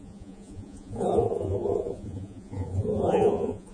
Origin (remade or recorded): remade